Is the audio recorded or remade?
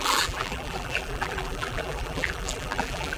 remade